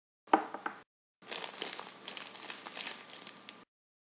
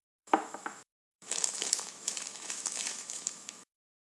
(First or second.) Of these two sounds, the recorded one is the first